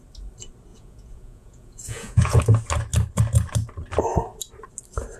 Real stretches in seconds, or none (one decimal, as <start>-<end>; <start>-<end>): 0.0-0.7; 2.4-5.2